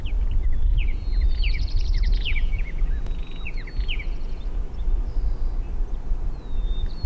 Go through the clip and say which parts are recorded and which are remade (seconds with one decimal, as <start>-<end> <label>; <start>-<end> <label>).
0.0-0.7 recorded; 0.7-4.4 remade; 4.4-7.1 recorded